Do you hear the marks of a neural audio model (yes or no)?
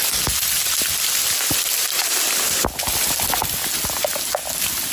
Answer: no